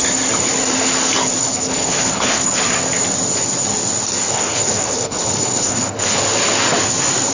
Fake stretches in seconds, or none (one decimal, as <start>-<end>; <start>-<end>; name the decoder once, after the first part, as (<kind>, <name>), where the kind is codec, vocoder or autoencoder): 1.4-2.6 (codec, HILCodec); 4.3-6.2